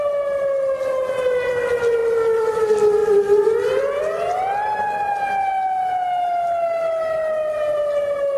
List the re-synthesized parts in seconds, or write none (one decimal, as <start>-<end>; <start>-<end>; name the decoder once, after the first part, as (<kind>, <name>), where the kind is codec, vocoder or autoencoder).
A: 2.0-2.6 (vocoder, BigVGAN v2); 3.0-4.0